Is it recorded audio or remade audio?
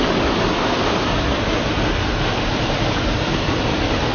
recorded